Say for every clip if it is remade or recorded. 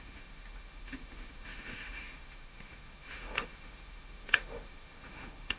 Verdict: remade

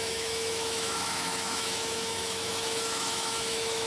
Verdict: remade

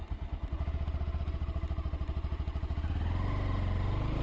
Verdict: recorded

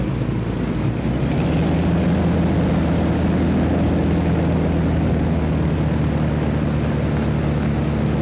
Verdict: recorded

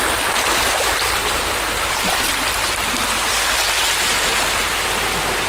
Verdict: recorded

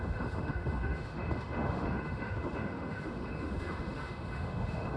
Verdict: remade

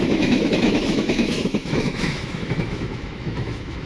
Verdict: remade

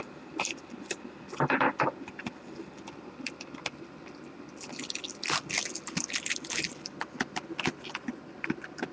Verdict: recorded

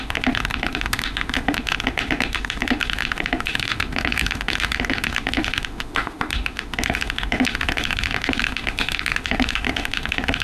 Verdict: remade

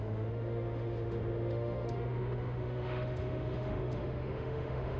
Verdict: remade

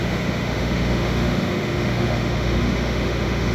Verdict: remade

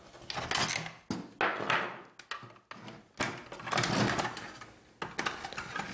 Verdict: recorded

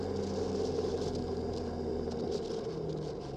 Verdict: recorded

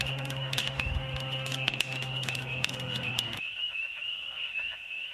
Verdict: remade